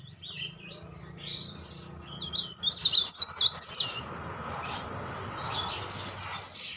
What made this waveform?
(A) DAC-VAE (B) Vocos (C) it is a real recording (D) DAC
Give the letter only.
C